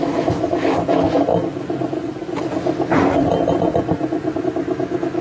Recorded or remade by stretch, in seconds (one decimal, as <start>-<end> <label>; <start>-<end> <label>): 0.0-1.3 remade; 1.3-4.4 recorded; 4.4-5.2 remade

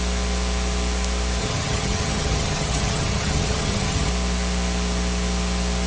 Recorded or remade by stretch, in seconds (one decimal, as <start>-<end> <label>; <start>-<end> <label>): 0.0-1.4 recorded; 1.4-4.1 remade; 4.1-5.9 recorded

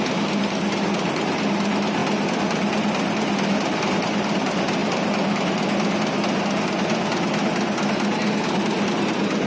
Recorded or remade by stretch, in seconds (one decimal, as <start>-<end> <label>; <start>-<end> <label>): 0.0-9.5 recorded

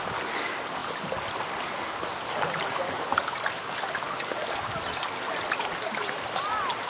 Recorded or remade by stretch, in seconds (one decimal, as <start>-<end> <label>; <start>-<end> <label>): 0.0-6.9 recorded

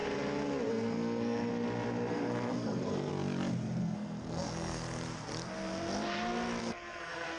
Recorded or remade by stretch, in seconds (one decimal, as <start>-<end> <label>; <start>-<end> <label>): 0.0-0.7 recorded; 0.7-1.5 remade; 1.5-2.1 recorded; 2.1-3.1 remade; 3.1-3.8 recorded; 3.8-4.8 remade; 4.8-6.6 recorded; 6.6-7.4 remade

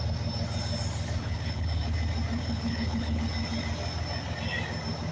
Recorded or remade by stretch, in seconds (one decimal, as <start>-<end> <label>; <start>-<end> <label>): 0.0-1.2 recorded; 1.2-1.8 remade; 1.8-2.4 recorded; 2.4-3.2 remade; 3.2-5.1 recorded

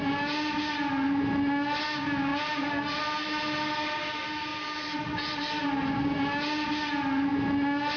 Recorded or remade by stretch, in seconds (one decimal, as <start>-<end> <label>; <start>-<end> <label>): 0.0-4.5 recorded; 4.5-5.7 remade; 5.7-8.0 recorded